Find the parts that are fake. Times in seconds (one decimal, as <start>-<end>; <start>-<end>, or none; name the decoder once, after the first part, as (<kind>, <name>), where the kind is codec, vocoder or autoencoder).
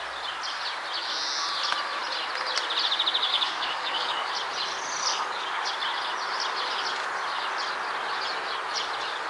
3.3-4.3 (codec, DAC); 5.1-5.7